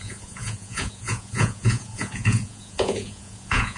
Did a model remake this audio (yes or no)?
yes